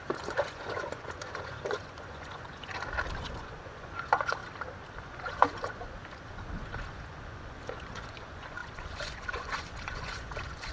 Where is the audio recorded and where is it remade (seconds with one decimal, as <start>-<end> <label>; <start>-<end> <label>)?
0.0-2.7 remade; 2.7-3.2 recorded; 3.2-4.4 remade; 4.4-5.0 recorded; 5.0-10.7 remade